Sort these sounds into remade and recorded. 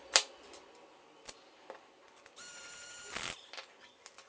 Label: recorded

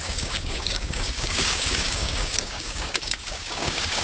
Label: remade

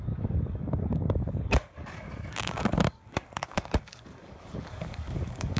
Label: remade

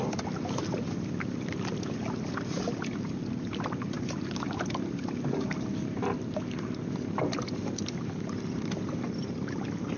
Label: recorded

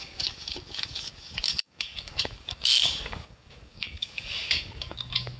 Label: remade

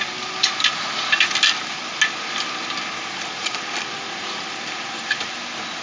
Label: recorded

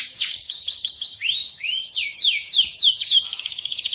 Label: remade